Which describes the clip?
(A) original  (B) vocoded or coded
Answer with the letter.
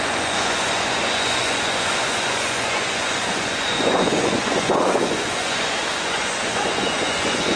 B